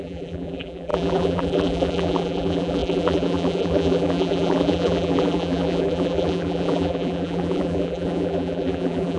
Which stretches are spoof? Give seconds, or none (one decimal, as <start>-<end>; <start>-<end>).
0.0-9.2